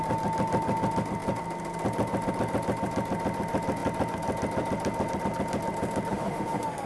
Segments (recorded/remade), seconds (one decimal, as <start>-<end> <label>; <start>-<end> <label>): 0.0-6.1 recorded; 6.1-6.9 remade